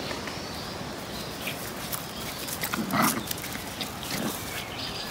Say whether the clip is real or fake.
real